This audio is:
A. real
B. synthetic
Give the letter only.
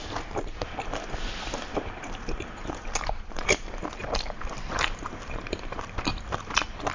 B